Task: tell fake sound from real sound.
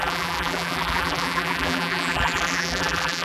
fake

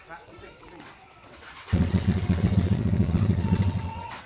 fake